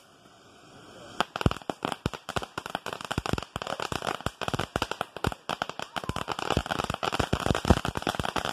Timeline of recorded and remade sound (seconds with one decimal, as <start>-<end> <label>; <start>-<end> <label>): 0.0-6.6 recorded; 6.6-7.1 remade; 7.1-8.5 recorded